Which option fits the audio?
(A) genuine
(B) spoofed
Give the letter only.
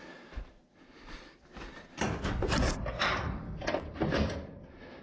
A